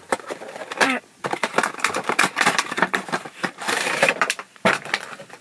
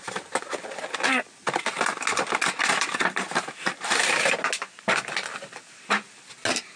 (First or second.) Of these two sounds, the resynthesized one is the first